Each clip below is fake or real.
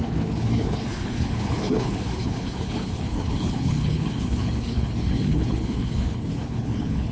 fake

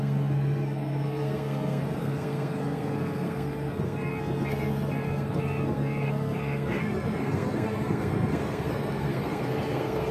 fake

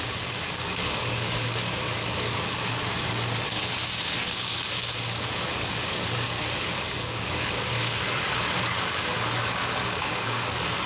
fake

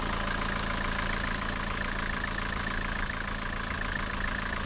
real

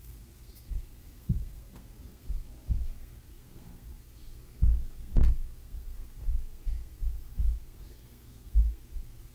fake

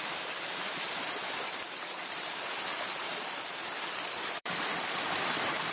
fake